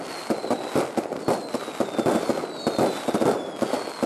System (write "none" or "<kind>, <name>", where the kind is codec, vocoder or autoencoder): none